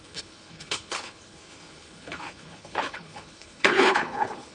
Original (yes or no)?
no